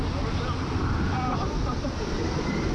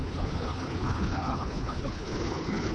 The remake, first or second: second